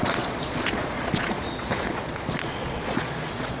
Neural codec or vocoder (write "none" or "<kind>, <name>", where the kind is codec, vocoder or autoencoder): vocoder, Vocos